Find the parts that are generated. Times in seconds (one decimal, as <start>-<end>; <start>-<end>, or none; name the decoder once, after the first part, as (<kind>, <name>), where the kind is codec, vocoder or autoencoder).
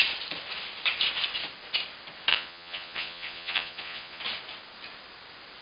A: 2.3-4.2 (vocoder, Vocos)